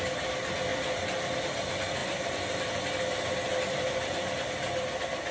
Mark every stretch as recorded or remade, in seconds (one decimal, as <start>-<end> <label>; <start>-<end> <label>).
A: 0.0-5.3 recorded